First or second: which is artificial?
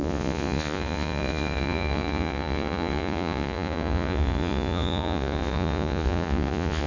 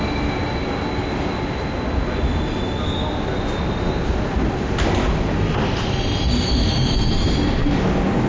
first